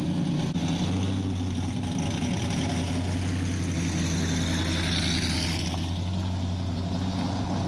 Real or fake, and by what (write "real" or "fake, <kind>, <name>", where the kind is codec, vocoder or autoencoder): real